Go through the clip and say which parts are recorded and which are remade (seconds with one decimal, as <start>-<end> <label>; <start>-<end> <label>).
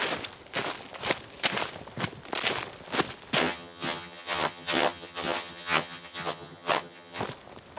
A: 0.0-3.4 recorded; 3.4-7.2 remade; 7.2-7.8 recorded